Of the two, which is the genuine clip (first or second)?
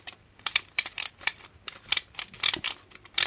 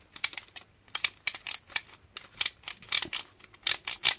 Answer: second